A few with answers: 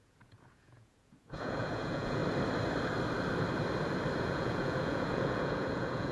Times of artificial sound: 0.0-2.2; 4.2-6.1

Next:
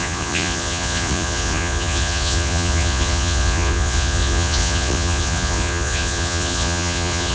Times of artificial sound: 0.0-7.3

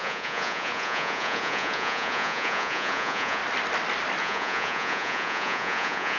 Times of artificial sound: 0.0-3.4; 4.2-6.2

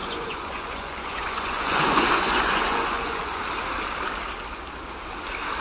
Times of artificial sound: 0.0-3.4

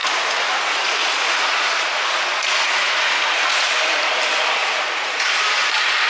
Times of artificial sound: 0.0-3.7; 4.6-5.4

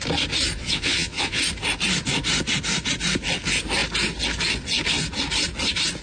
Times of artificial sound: 0.6-1.4

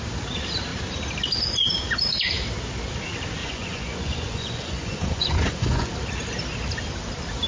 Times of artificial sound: 3.4-5.9

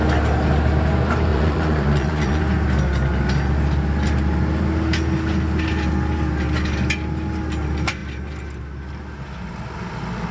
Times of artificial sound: 1.3-2.4